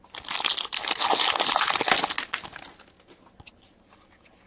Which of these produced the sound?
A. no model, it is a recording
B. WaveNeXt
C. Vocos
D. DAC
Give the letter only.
A